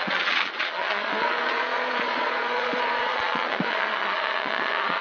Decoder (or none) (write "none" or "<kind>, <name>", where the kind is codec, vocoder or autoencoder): vocoder, Vocos